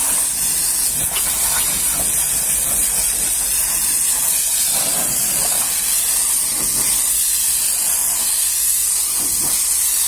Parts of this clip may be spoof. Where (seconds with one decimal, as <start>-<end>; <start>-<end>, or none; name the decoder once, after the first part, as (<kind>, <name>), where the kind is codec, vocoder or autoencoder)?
none

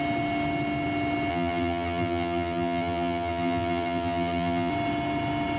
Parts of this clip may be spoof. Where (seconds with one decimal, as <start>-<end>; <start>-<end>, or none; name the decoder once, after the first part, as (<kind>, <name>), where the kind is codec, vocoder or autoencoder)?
1.3-4.7 (vocoder, BigVGAN v2)

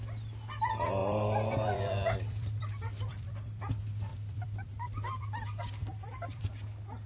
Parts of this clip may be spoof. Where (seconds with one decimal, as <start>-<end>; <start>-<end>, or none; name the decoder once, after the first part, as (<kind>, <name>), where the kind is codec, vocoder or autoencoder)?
1.0-3.6 (vocoder, BigVGAN v2); 4.1-6.4

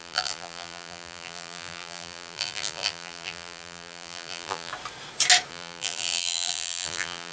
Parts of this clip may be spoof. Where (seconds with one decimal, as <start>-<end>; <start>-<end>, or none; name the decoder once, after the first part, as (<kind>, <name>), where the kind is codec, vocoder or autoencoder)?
0.0-4.7 (vocoder, BigVGAN v2); 5.5-7.3

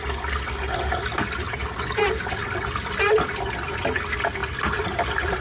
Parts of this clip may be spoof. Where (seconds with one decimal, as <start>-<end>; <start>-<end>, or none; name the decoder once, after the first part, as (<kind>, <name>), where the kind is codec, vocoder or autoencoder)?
1.6-3.8 (vocoder, BigVGAN v2); 4.4-5.0